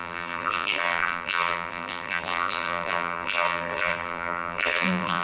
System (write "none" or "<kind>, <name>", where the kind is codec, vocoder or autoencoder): vocoder, BigVGAN v2